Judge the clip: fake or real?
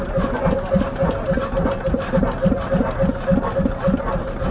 real